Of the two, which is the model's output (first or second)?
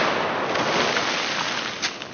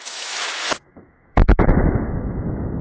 second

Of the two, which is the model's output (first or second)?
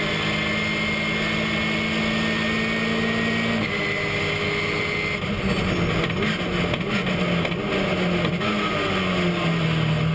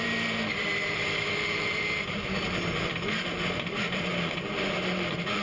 second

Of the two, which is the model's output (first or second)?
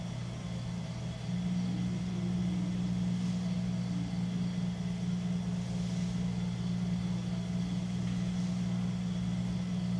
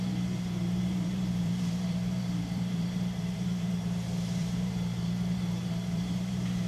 second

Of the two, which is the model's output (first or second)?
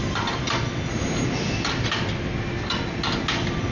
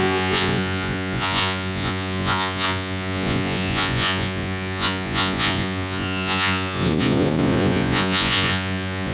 second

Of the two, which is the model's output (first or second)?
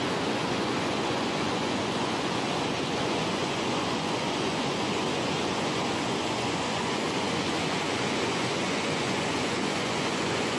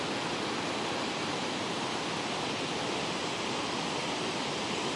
first